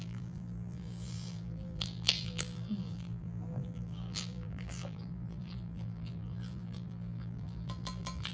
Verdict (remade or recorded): remade